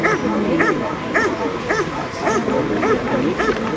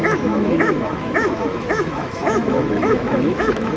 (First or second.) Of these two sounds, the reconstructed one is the second